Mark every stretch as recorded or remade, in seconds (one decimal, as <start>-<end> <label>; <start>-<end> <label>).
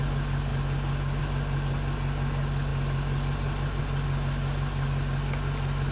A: 0.0-5.9 recorded